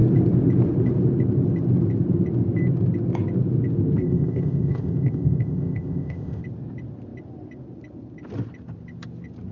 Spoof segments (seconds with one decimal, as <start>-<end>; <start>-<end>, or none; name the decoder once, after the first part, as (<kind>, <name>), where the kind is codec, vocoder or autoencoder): 4.0-6.4 (codec, ZipCodec)